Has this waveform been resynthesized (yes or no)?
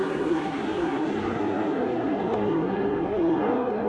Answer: yes